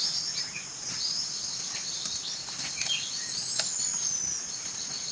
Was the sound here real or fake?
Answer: real